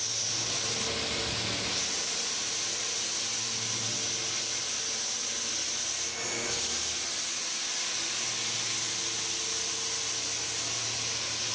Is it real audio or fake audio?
real